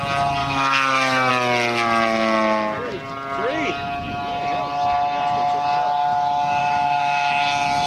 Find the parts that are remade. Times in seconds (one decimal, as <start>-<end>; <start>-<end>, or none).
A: 0.4-1.3; 6.6-7.4